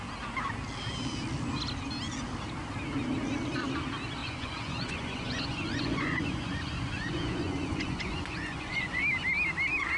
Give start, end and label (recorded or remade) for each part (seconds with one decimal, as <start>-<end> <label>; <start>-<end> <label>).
0.0-4.2 recorded; 4.2-9.0 remade; 9.0-10.0 recorded